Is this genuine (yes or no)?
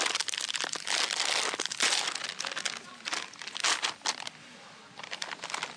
yes